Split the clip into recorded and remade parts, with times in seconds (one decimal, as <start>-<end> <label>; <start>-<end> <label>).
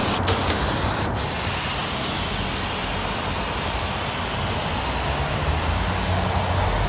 0.0-6.9 recorded